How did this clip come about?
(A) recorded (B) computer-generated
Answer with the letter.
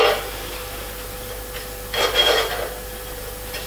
A